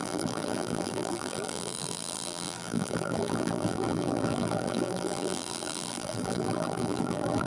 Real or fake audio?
fake